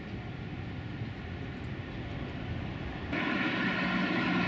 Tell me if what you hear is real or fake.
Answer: real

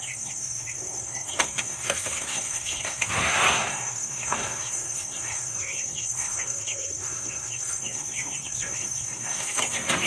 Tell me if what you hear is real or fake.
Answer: fake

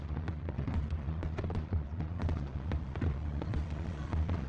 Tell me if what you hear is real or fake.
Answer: fake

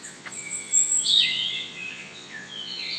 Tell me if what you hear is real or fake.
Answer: fake